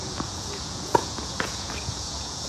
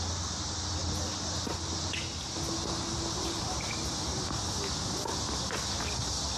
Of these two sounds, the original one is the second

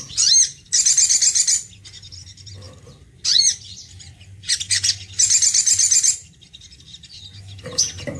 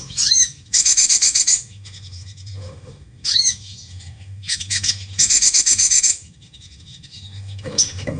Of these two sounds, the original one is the first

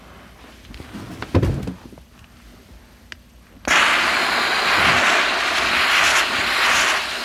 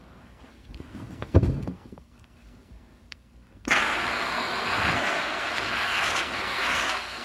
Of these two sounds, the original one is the first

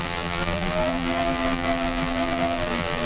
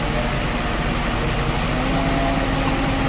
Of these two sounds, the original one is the second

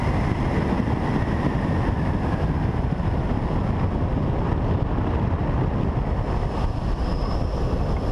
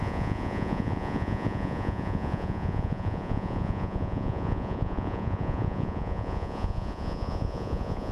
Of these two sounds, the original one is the first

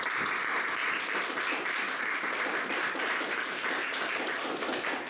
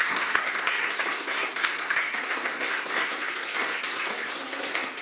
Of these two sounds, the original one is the first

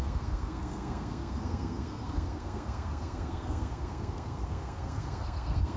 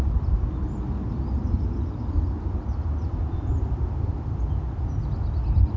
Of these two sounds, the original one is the second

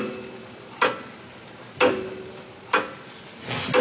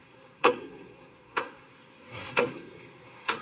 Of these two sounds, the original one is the first